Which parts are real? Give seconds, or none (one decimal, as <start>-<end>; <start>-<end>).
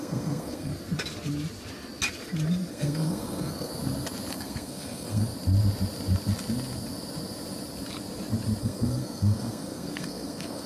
0.7-2.7; 3.7-4.3; 5.2-8.6